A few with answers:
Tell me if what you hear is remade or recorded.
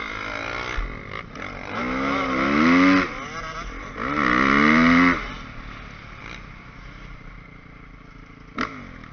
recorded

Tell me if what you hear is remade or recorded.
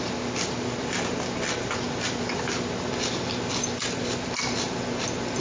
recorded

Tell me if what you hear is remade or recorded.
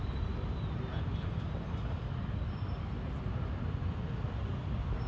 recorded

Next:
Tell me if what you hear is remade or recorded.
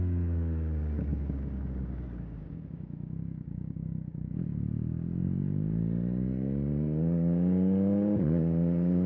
remade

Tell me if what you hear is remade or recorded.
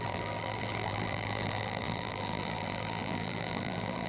remade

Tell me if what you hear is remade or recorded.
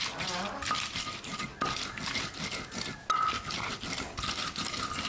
recorded